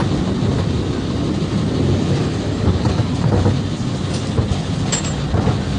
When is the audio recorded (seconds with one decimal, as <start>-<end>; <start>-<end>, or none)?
0.0-2.2; 3.1-5.8